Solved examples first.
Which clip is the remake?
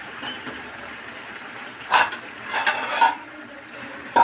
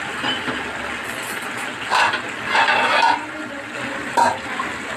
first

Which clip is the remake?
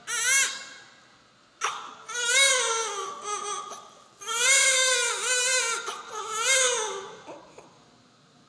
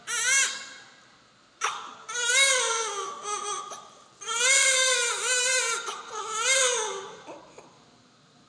second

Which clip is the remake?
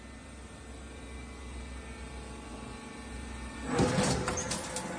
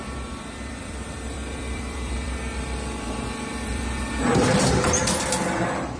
second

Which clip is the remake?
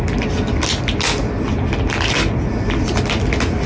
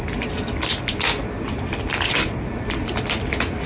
second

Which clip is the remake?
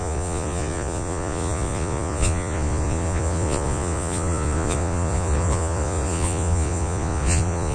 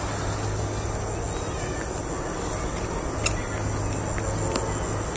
first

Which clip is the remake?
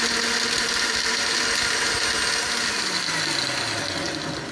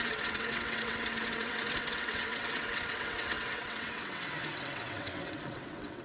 second